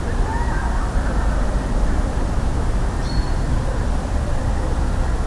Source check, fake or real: real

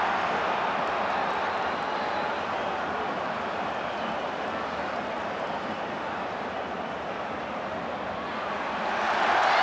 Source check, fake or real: real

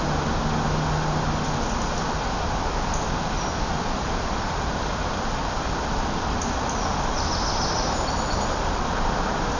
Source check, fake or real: real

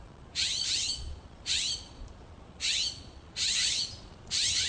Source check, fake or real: fake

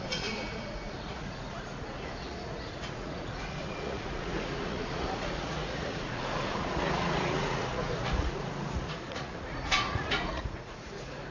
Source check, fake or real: fake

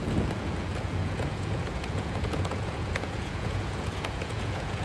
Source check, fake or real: fake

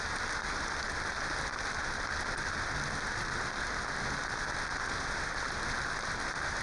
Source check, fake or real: real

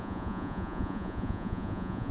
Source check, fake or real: fake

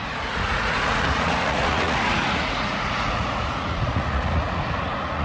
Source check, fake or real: fake